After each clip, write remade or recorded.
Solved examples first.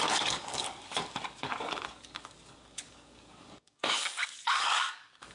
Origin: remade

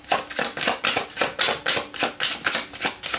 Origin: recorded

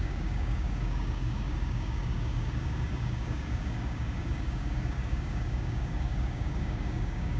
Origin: remade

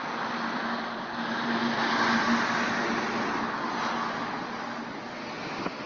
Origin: recorded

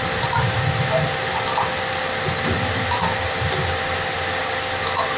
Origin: recorded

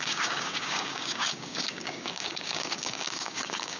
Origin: remade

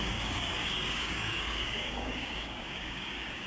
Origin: remade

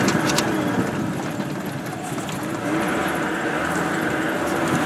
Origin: recorded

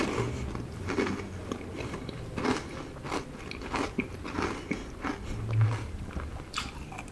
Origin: recorded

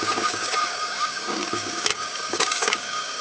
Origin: remade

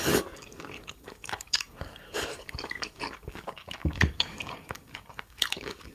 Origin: remade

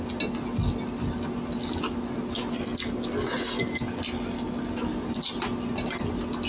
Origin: recorded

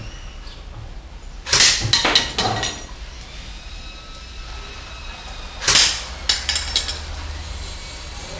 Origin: recorded